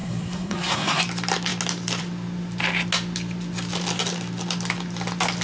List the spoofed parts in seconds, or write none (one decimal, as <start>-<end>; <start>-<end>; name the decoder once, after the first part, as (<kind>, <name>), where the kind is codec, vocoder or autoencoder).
0.0-1.0 (codec, SNAC)

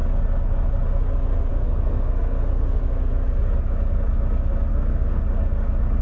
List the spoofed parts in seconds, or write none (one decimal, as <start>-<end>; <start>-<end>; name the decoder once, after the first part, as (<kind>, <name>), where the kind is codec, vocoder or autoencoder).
1.5-2.8 (codec, SNAC); 4.7-5.2

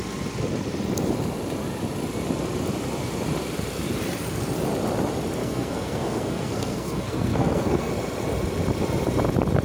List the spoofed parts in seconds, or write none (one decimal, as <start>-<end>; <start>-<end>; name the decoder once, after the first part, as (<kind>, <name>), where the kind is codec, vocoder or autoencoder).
5.4-7.9 (codec, SNAC)

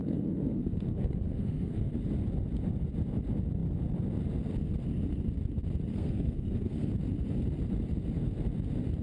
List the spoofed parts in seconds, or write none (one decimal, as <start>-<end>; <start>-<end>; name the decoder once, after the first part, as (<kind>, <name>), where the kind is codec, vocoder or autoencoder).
0.0-1.9 (codec, SNAC); 5.9-7.0

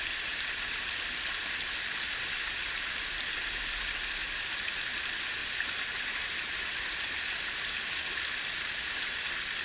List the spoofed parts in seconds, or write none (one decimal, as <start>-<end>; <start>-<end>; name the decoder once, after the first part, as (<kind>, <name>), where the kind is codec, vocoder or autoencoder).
none

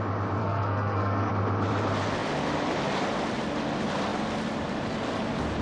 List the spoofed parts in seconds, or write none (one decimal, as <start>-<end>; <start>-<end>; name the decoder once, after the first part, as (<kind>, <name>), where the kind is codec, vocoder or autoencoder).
0.4-1.3 (codec, SNAC)

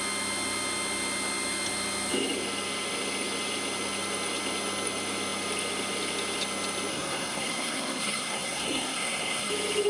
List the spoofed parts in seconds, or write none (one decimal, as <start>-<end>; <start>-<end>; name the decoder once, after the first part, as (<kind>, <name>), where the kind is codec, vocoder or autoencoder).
6.9-9.5 (codec, SNAC)